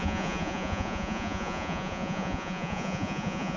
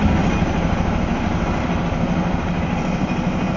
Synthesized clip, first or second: first